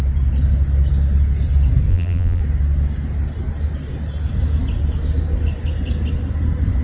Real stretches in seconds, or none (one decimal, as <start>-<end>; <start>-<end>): 0.0-1.9; 2.4-6.8